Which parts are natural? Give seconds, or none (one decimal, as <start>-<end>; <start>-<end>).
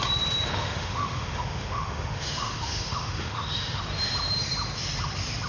0.0-0.5; 3.8-5.5